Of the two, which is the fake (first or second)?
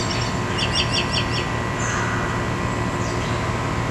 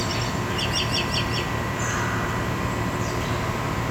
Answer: second